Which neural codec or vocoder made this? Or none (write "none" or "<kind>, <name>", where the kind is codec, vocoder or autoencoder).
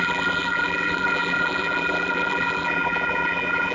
vocoder, BigVGAN v2